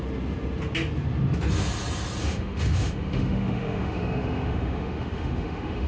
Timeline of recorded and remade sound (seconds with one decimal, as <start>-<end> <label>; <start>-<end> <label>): 0.0-2.2 recorded; 2.2-5.9 remade